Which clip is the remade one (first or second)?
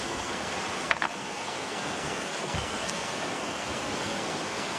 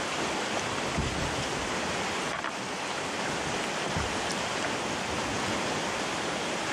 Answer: first